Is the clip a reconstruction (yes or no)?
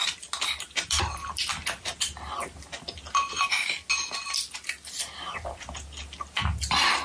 no